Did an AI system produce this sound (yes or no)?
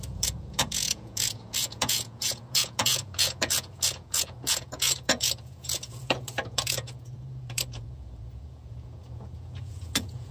yes